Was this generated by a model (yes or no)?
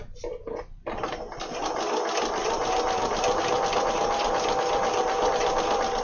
no